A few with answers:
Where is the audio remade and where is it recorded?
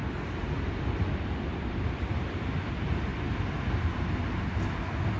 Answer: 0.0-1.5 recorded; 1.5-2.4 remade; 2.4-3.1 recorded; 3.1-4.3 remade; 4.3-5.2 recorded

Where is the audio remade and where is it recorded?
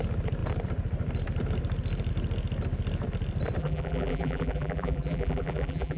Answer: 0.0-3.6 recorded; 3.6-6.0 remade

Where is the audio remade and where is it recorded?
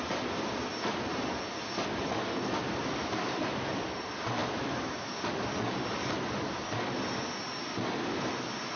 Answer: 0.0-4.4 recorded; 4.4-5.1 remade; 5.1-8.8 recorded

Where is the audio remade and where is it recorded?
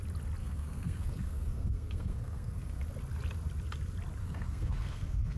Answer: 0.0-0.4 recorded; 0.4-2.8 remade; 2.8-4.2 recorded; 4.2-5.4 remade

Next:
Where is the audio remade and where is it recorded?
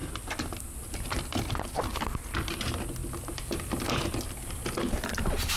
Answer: 0.0-5.6 recorded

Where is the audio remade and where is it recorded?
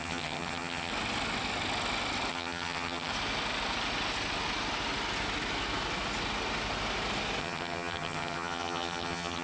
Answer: 0.0-0.9 remade; 0.9-2.3 recorded; 2.3-3.1 remade; 3.1-7.4 recorded; 7.4-9.4 remade